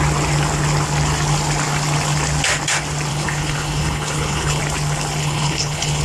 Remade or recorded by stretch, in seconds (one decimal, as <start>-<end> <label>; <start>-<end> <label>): 0.0-3.1 recorded; 3.1-4.6 remade; 4.6-5.2 recorded; 5.2-6.0 remade